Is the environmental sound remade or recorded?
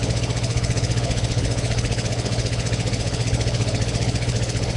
remade